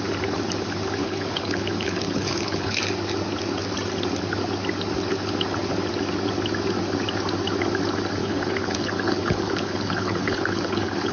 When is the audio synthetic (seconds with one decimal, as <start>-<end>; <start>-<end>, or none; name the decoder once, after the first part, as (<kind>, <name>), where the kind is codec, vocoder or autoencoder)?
1.0-2.8 (codec, HILCodec); 8.2-11.1